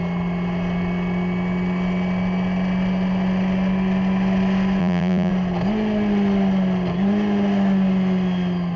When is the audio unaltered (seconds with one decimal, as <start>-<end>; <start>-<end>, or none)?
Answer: 0.0-4.8; 5.3-8.8